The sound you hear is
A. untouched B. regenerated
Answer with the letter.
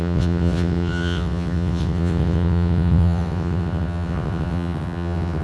B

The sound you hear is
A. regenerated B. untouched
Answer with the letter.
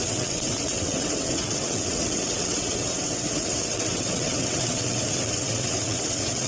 A